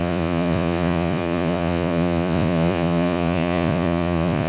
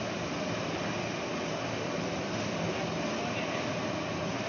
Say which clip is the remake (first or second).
first